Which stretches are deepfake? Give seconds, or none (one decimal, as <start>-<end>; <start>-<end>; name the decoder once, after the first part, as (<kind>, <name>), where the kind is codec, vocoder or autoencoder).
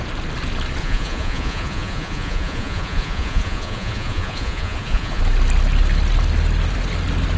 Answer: 0.8-5.2 (vocoder, Vocos)